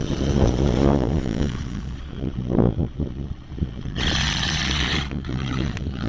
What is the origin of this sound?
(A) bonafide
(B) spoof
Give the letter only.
B